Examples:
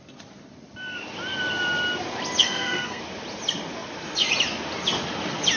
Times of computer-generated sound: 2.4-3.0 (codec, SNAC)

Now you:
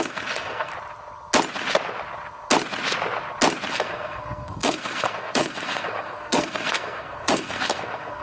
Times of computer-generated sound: 0.0-0.7 (codec, SNAC); 3.7-8.2

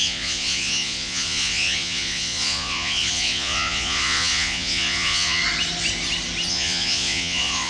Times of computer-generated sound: 0.0-5.4 (vocoder, Vocos); 6.5-7.7